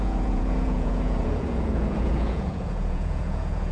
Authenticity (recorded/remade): remade